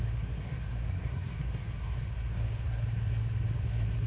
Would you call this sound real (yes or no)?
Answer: no